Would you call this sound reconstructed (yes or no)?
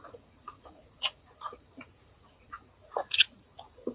yes